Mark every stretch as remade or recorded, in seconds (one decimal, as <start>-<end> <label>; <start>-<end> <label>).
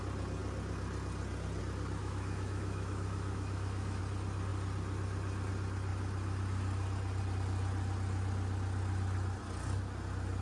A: 0.0-2.0 recorded; 2.0-4.0 remade; 4.0-10.4 recorded